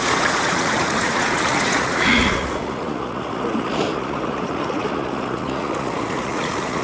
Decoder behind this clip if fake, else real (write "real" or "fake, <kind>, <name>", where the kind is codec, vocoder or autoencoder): fake, vocoder, Vocos